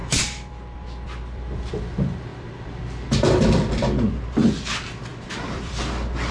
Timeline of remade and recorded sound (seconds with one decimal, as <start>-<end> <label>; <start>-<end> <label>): 0.0-1.7 remade; 1.7-2.3 recorded; 2.3-2.8 remade; 2.8-5.1 recorded; 5.1-5.8 remade; 5.8-6.3 recorded